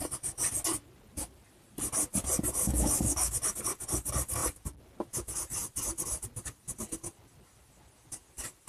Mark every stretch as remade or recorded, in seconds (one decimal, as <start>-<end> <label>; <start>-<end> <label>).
0.0-2.7 recorded; 2.7-3.3 remade; 3.3-8.7 recorded